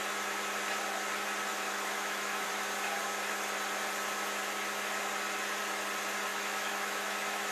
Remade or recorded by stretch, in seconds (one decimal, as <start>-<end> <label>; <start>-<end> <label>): 0.0-1.5 recorded; 1.5-2.5 remade; 2.5-6.3 recorded; 6.3-7.5 remade